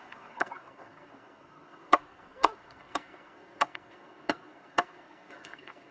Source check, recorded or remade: remade